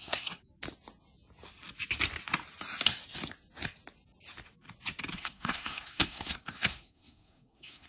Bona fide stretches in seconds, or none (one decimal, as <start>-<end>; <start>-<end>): 0.4-5.1